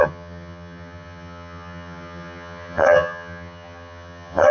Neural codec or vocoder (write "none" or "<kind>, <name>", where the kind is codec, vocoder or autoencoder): vocoder, HiFi-GAN